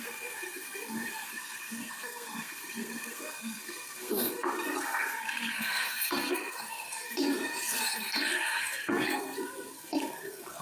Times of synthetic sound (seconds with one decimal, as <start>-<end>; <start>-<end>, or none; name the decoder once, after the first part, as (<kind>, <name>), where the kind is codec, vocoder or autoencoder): 0.0-10.6 (codec, SNAC)